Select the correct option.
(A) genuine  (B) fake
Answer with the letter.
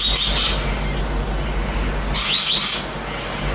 A